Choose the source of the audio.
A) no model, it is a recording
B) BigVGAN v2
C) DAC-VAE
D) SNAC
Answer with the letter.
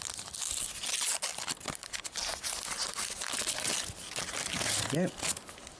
A